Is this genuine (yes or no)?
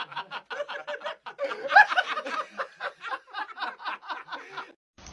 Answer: yes